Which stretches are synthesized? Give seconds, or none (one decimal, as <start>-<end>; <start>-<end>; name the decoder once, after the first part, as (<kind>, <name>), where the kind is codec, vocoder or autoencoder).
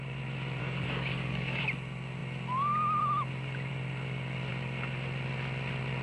0.6-1.6 (codec, DAC)